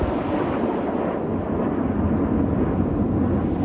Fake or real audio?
real